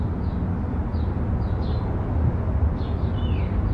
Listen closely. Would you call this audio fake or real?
real